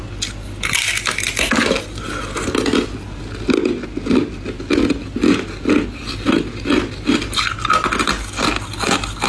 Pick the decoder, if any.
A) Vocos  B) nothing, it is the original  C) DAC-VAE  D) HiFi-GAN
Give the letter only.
B